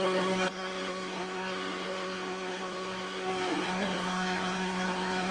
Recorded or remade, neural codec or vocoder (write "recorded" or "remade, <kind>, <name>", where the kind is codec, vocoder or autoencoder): remade, codec, SNAC